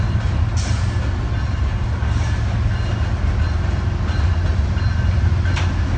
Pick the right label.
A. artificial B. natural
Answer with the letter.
B